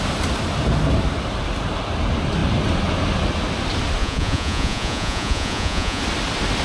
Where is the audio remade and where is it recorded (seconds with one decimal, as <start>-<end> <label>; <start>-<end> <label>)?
0.0-4.0 recorded; 4.0-6.0 remade; 6.0-6.6 recorded